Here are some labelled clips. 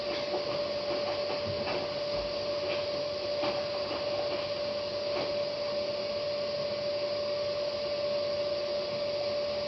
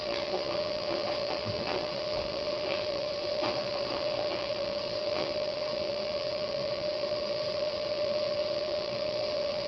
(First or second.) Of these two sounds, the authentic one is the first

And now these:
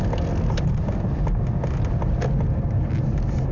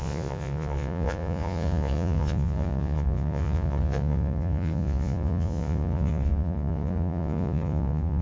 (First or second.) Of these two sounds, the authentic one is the first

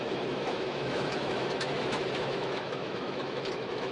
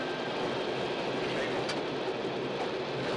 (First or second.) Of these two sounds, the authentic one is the second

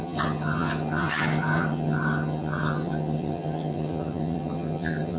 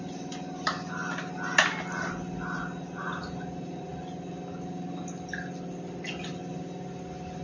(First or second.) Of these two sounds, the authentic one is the second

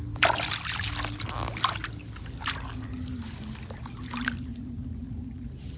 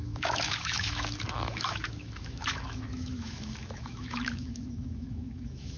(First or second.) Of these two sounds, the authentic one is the first